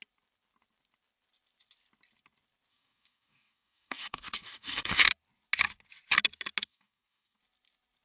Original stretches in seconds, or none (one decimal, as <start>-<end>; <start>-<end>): 0.0-2.7; 5.1-6.6; 7.4-8.0